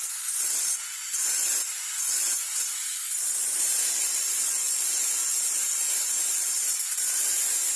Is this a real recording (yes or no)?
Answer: yes